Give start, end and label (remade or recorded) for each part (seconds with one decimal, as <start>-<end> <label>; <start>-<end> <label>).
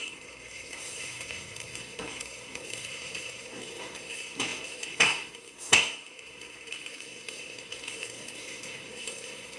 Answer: 0.0-9.6 remade